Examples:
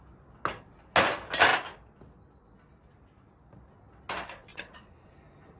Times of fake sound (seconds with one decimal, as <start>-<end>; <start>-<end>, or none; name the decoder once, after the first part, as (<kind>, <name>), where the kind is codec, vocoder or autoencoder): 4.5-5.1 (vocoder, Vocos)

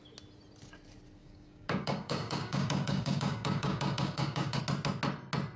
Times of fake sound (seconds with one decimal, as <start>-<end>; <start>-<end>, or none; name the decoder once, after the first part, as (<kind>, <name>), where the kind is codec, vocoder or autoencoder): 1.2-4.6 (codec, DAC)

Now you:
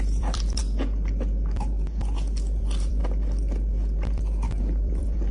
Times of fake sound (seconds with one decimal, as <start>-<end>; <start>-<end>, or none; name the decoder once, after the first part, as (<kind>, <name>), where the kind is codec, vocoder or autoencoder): 0.0-0.6 (vocoder, BigVGAN v2); 2.6-3.0; 4.6-5.3

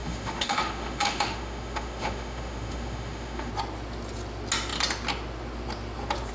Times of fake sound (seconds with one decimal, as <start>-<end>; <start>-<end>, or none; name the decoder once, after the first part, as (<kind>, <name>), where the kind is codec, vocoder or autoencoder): 0.0-3.5 (autoencoder, DAC-VAE)

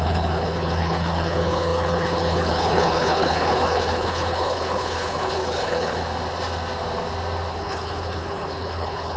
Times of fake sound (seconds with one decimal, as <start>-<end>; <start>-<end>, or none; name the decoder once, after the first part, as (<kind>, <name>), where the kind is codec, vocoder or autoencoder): 0.0-6.0 (codec, HILCodec); 7.5-9.2

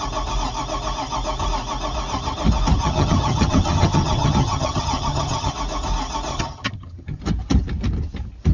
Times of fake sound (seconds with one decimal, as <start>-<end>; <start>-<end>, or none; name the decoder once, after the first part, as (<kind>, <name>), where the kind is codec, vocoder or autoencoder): 2.8-5.5 (vocoder, HiFi-GAN); 6.3-7.2